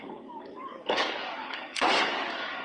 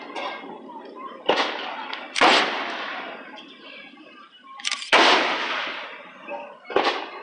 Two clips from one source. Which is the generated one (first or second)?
first